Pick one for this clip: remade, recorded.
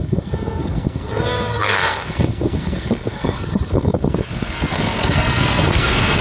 remade